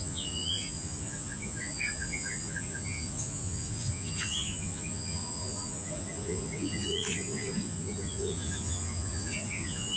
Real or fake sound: fake